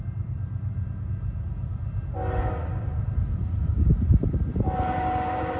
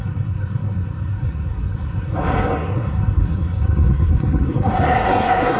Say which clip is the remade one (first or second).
second